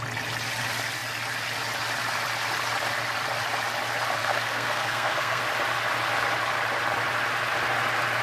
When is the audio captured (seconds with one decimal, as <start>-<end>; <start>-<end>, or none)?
0.0-4.2; 5.4-8.2